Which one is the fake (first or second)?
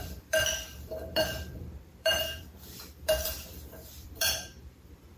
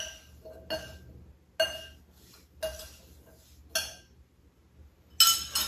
first